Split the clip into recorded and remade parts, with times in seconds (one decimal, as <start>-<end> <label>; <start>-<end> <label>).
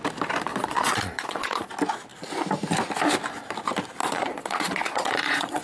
0.0-0.5 recorded; 0.5-1.7 remade; 1.7-4.0 recorded; 4.0-5.6 remade